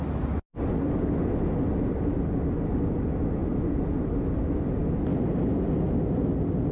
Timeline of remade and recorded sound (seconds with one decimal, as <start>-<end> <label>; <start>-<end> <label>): 0.0-6.7 recorded